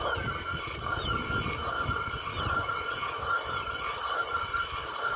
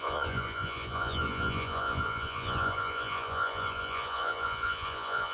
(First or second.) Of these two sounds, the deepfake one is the second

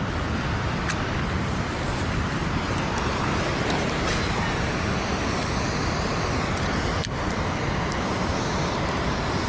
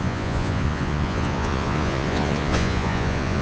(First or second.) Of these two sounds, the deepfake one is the second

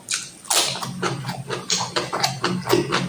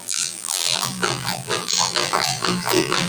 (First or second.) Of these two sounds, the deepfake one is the second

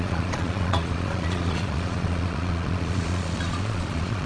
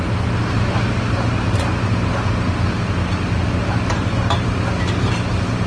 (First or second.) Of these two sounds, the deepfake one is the first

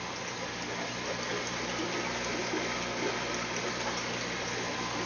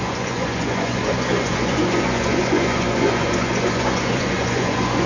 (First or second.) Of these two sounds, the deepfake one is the second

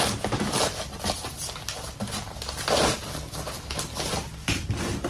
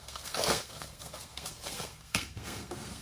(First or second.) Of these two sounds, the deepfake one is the second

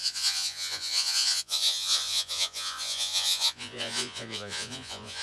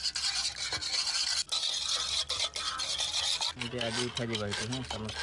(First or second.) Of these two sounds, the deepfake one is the first